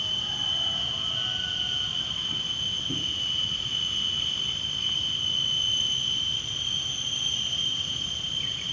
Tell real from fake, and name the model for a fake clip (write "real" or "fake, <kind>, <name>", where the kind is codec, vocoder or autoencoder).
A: fake, vocoder, BigVGAN v2